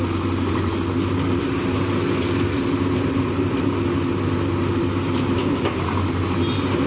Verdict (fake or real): real